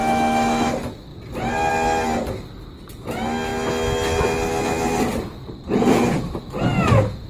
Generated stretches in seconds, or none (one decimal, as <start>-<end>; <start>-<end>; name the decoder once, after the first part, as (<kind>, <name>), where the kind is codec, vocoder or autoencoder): 0.0-0.7 (autoencoder, DAC-VAE)